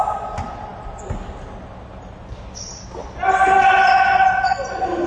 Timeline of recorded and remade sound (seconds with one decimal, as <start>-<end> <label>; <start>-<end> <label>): 0.0-5.1 recorded